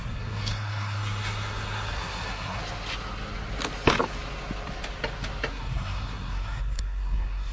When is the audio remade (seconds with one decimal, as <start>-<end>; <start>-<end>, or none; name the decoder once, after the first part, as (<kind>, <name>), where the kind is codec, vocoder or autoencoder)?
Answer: 0.0-2.6 (codec, SNAC); 5.5-7.5